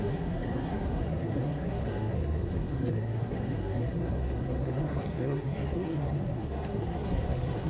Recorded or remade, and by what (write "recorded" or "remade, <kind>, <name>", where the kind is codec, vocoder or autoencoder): remade, codec, SNAC